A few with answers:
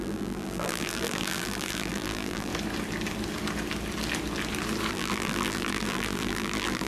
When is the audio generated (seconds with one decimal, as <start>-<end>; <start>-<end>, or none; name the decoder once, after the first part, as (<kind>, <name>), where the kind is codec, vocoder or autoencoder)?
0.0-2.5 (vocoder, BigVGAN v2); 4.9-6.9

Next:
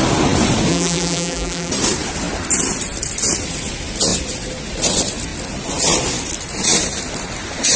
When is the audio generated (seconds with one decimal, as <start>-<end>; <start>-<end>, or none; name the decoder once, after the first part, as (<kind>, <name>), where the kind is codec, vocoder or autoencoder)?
0.7-1.7 (vocoder, BigVGAN v2)

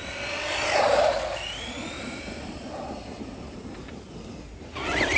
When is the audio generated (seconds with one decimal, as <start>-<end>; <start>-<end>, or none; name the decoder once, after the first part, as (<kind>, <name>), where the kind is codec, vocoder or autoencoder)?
none

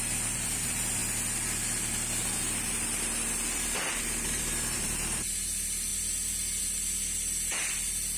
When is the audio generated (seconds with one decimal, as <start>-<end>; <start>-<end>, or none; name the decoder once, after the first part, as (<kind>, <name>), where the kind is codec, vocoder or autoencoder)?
0.0-1.0 (vocoder, BigVGAN v2); 2.2-5.9; 6.6-8.2